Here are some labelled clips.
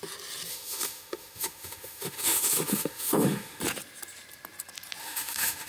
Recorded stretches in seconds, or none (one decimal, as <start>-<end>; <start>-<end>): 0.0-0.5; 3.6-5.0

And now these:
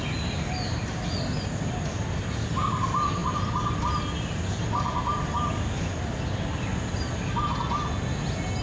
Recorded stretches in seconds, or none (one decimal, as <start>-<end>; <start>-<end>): 0.0-8.6

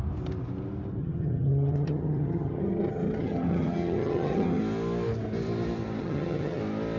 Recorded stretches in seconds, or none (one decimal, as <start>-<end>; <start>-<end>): 0.0-1.0; 4.6-6.0; 6.6-7.0

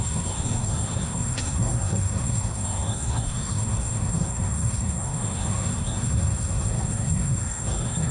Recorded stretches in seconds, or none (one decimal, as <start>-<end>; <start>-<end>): none

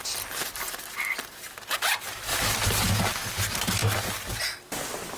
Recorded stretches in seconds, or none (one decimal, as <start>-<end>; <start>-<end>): 0.0-2.3; 2.9-3.8; 4.4-5.2

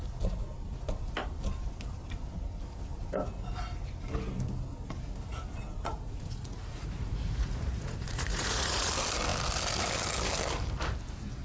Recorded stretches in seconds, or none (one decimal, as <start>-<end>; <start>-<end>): 0.0-5.9; 8.9-11.4

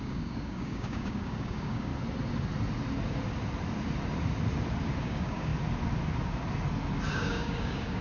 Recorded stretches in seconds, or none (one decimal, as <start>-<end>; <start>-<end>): 1.9-5.0; 5.5-7.1

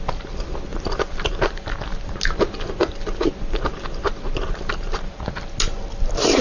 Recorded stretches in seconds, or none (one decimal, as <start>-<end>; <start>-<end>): 0.0-6.4